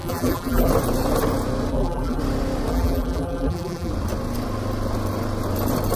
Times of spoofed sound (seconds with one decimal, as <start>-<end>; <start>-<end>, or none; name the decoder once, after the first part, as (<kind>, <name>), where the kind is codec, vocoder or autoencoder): 0.0-0.7 (vocoder, BigVGAN v2); 1.7-2.2; 2.7-3.9